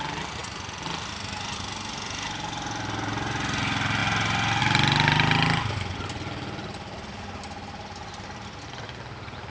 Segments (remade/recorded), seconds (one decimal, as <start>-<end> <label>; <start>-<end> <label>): 0.0-9.5 recorded